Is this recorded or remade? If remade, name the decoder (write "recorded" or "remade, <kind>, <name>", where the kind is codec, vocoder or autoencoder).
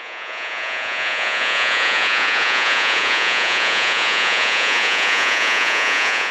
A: remade, vocoder, Vocos